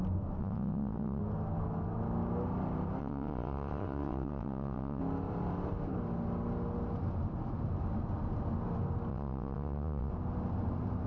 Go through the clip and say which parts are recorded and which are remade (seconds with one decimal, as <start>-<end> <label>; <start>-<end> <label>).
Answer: 0.0-0.4 recorded; 0.4-1.2 remade; 1.2-3.0 recorded; 3.0-5.0 remade; 5.0-9.1 recorded; 9.1-10.1 remade; 10.1-11.1 recorded